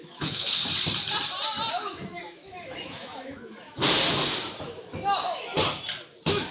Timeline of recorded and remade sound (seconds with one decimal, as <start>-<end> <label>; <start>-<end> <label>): 0.0-0.6 remade; 0.6-1.7 recorded; 1.7-3.8 remade; 3.8-4.6 recorded; 4.6-5.5 remade; 5.5-6.5 recorded

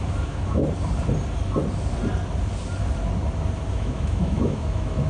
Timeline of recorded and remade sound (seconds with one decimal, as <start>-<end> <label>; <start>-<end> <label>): 0.0-0.6 remade; 0.6-3.7 recorded; 3.7-5.1 remade

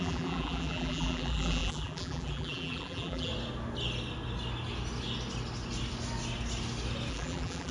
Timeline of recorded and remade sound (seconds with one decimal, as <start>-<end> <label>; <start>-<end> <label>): 0.0-3.3 remade; 3.3-7.1 recorded; 7.1-7.7 remade